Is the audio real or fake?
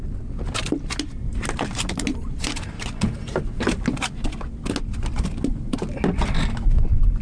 real